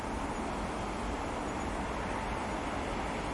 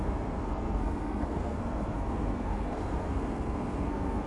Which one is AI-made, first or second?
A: second